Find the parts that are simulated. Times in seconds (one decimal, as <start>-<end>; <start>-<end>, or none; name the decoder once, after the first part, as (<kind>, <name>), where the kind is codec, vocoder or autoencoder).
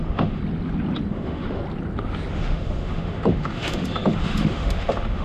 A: 0.0-0.4 (autoencoder, DAC-VAE); 1.1-1.6; 2.3-5.2